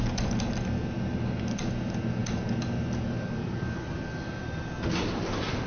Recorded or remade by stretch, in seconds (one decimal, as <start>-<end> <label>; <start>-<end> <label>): 0.0-5.7 recorded

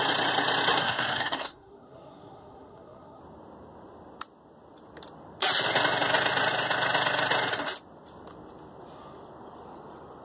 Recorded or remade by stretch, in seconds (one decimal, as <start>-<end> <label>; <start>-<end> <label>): 0.0-0.8 recorded; 0.8-3.2 remade; 3.2-10.2 recorded

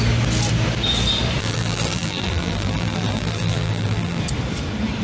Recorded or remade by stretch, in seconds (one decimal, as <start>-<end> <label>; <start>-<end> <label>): 0.0-1.4 recorded; 1.4-4.2 remade; 4.2-5.0 recorded